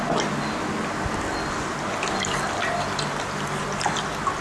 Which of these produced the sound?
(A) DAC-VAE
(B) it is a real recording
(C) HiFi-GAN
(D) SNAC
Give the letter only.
B